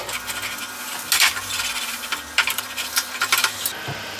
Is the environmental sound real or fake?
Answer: real